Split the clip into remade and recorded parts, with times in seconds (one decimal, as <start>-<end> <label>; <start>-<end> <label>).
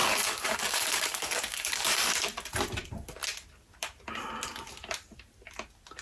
0.0-2.1 remade; 2.1-6.0 recorded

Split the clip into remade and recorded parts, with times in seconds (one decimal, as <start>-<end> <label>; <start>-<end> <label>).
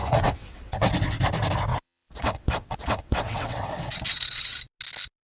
0.0-0.9 remade; 0.9-1.7 recorded; 1.7-4.6 remade; 4.6-5.3 recorded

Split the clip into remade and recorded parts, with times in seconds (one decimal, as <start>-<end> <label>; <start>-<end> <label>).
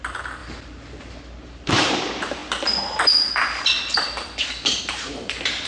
0.0-2.4 remade; 2.4-4.8 recorded; 4.8-5.7 remade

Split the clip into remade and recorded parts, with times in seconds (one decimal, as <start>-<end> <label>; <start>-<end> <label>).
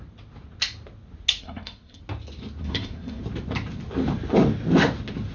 0.0-1.4 recorded; 1.4-2.0 remade; 2.0-2.6 recorded; 2.6-3.2 remade; 3.2-5.3 recorded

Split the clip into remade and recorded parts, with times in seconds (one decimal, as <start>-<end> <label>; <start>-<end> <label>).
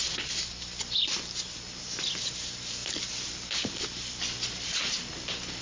0.0-5.6 recorded